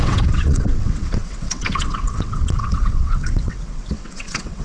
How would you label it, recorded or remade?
remade